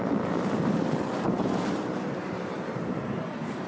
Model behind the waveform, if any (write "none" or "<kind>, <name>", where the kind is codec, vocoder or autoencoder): vocoder, BigVGAN v2